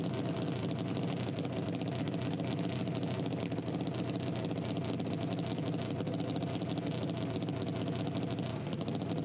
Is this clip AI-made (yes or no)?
no